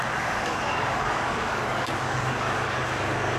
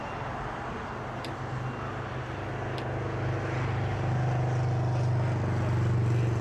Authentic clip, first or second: second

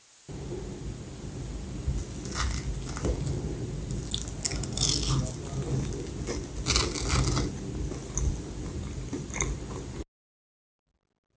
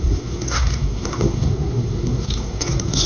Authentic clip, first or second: first